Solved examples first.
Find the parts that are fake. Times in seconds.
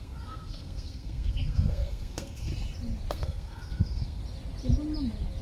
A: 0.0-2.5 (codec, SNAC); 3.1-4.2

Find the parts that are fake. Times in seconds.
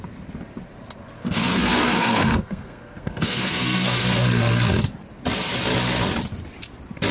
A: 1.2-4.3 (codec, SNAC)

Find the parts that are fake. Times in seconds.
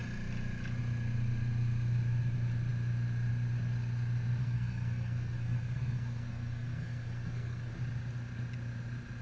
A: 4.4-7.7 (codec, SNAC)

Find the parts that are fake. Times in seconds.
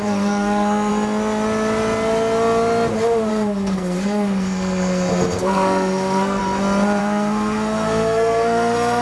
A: 0.0-0.9 (codec, SNAC); 3.3-6.4; 7.0-9.0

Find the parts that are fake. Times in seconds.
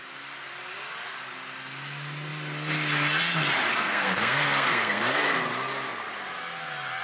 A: 3.7-5.0 (codec, SNAC)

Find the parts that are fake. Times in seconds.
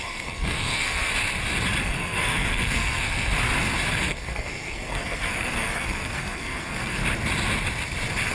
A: 0.0-1.1 (codec, SNAC); 1.8-3.3; 3.9-7.0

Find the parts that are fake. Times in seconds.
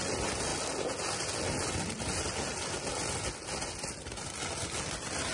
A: none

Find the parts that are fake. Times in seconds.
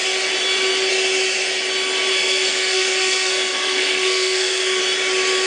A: 2.1-4.8 (codec, SNAC)